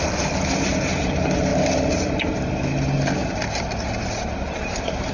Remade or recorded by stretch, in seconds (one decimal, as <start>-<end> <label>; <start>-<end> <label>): 0.0-5.1 recorded